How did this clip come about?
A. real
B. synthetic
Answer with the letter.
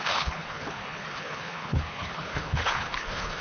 B